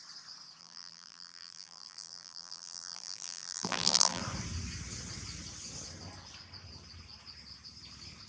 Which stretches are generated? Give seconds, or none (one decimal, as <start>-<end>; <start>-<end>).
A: 0.6-4.2